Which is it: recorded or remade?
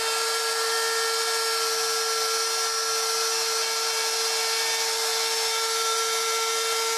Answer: recorded